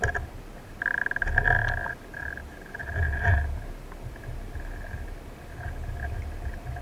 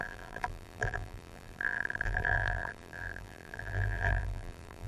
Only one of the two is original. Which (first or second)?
first